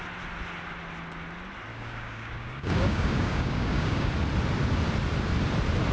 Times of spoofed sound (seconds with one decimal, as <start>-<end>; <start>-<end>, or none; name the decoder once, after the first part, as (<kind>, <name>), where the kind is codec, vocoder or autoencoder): 1.7-4.1 (codec, DAC)